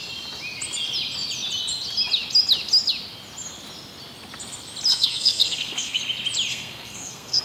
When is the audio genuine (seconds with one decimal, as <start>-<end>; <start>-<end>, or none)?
0.0-4.9; 6.0-6.5